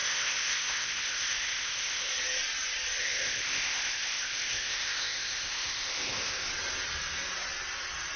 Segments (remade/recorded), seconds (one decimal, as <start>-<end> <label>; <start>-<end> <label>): 0.0-2.1 remade; 2.1-3.0 recorded; 3.0-6.5 remade; 6.5-8.2 recorded